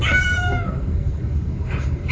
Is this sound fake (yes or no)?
yes